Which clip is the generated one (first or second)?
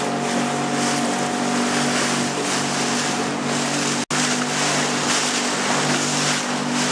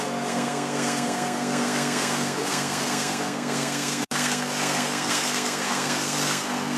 second